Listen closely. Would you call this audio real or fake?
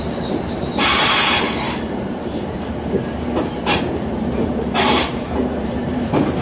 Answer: fake